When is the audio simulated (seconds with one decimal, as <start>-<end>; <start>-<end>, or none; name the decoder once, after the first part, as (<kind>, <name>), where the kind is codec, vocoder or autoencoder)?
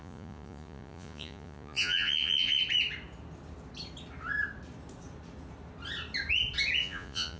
0.0-2.6 (vocoder, Vocos); 6.8-7.4